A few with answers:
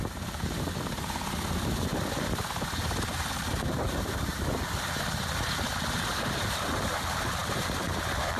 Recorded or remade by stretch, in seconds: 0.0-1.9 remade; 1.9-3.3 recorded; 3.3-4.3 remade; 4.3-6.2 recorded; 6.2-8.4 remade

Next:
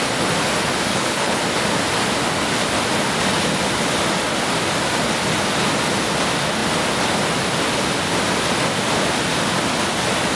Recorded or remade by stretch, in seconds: 0.0-0.9 recorded; 0.9-1.4 remade; 1.4-10.4 recorded

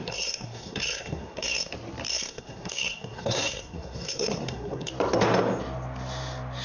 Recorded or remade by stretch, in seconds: 0.0-1.7 remade; 1.7-2.1 recorded; 2.1-4.9 remade; 4.9-6.6 recorded

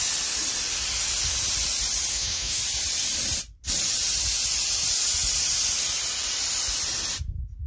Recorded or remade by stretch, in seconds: 0.0-2.1 recorded; 2.1-2.6 remade; 2.6-7.7 recorded

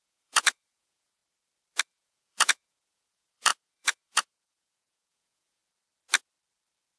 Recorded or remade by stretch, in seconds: 0.0-1.2 remade; 1.2-1.8 recorded; 1.8-5.6 remade; 5.6-7.0 recorded